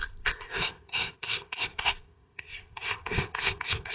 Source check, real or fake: fake